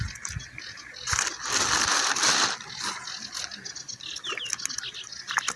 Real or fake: real